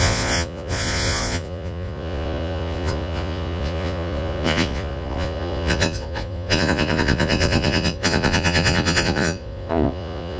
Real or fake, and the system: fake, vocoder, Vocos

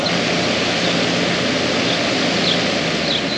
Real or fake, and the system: real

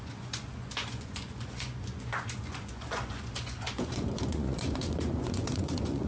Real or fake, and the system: fake, vocoder, Vocos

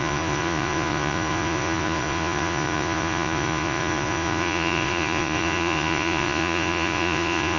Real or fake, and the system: fake, vocoder, Vocos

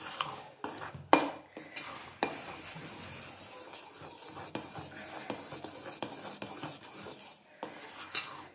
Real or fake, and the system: real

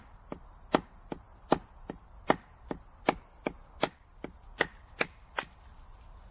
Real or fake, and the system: real